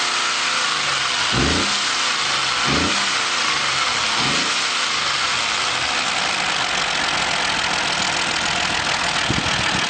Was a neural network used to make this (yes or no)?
no